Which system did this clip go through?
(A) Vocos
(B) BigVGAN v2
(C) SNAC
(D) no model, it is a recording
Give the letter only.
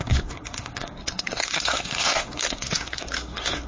C